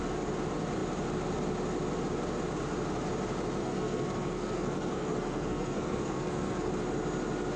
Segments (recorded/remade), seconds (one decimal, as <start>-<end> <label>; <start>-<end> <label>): 0.0-3.6 recorded; 3.6-6.7 remade; 6.7-7.6 recorded